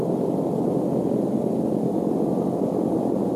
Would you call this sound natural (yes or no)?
no